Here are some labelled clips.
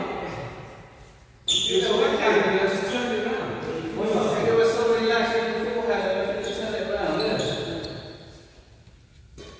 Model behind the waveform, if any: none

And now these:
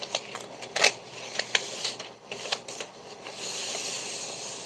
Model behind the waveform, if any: none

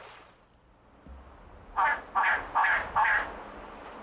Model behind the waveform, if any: none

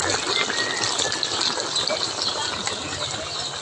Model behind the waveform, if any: none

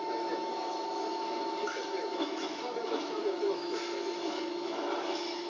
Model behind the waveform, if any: autoencoder, DAC-VAE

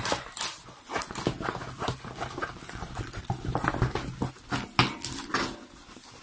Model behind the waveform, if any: none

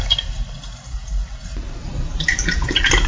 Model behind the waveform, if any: vocoder, BigVGAN v2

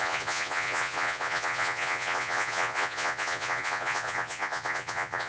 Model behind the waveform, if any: vocoder, Vocos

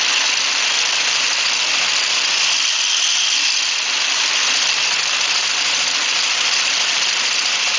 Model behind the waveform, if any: none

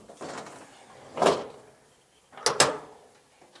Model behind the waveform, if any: none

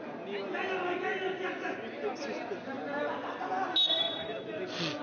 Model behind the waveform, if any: none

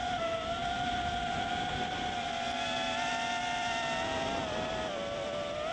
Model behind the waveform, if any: none